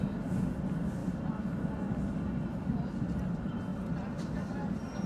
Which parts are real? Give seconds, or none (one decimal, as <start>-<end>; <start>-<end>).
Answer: 0.0-5.1